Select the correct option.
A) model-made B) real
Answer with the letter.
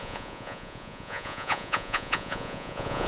A